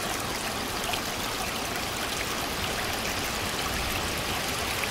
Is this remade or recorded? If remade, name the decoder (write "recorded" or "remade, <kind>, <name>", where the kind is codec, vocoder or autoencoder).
recorded